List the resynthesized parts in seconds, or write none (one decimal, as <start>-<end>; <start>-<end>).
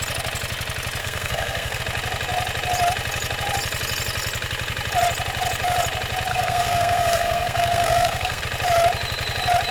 1.0-1.8; 6.3-8.4